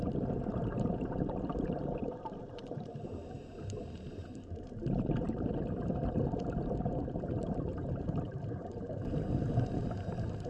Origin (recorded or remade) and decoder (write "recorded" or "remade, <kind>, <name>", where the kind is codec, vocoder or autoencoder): remade, vocoder, BigVGAN v2